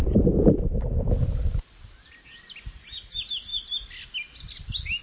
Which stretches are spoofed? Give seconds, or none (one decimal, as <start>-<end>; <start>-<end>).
none